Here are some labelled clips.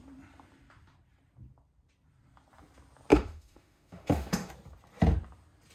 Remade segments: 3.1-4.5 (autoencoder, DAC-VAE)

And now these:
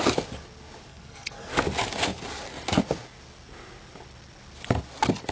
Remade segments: 0.9-1.5 (codec, SNAC)

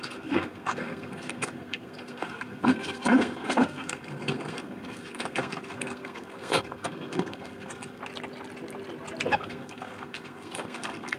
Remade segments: 0.0-8.0 (codec, SNAC); 9.3-11.2

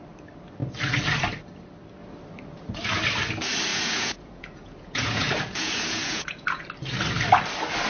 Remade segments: 3.7-6.6 (vocoder, Vocos)

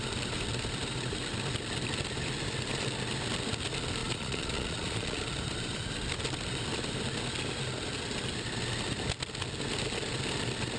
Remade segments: 4.0-5.2 (vocoder, Vocos)

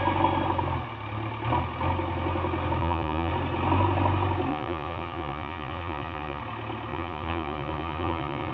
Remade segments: 2.8-3.3 (vocoder, Vocos); 4.5-6.4; 6.9-8.5